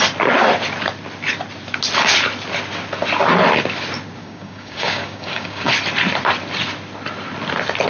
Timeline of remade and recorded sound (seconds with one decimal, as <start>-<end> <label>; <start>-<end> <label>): 0.0-4.2 recorded; 4.2-5.7 remade; 5.7-7.9 recorded